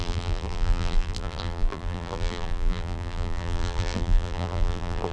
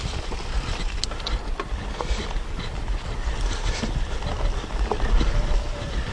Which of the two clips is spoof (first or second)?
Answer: first